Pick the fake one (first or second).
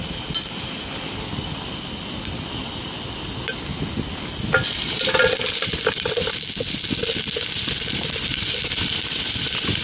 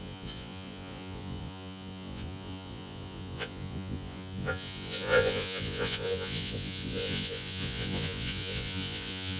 second